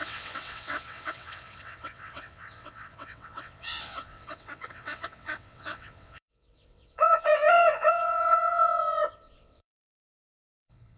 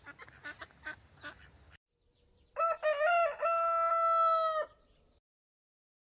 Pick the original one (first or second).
second